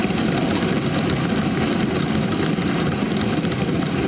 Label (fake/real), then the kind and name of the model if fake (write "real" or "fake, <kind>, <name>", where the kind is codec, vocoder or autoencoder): fake, vocoder, BigVGAN v2